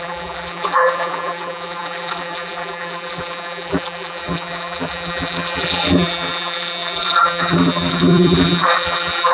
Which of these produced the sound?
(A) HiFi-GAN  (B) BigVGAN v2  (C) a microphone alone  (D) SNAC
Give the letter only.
B